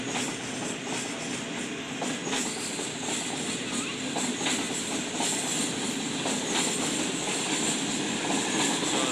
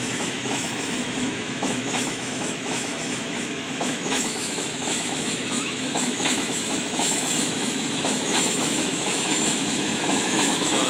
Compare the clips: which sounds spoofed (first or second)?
second